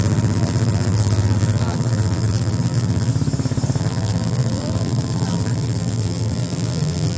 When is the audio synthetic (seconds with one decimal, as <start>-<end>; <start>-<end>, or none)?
0.0-3.1; 3.8-7.2